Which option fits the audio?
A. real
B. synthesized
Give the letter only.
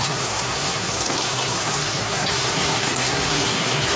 B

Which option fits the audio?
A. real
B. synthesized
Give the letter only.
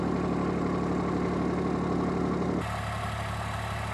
A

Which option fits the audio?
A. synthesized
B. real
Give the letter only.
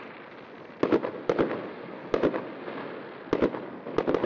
B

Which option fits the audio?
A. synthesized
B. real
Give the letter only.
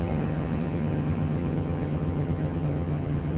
A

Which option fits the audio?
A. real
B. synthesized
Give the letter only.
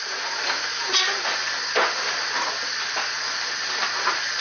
A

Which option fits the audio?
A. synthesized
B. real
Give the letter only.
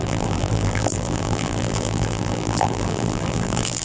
A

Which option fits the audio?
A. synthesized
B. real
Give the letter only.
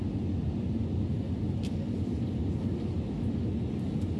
B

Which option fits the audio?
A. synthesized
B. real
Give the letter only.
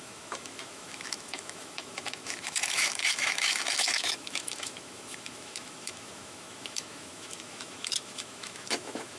A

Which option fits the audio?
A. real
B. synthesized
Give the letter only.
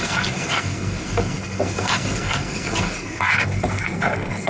B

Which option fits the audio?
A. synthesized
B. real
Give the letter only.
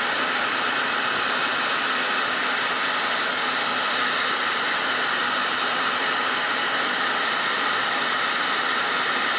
B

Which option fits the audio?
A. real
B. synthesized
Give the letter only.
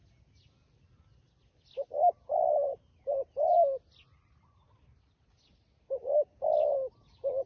A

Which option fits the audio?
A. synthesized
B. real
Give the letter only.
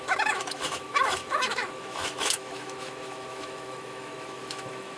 A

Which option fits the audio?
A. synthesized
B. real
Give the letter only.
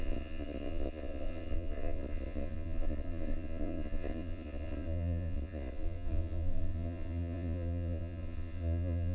A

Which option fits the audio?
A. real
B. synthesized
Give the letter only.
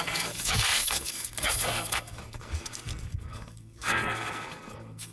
B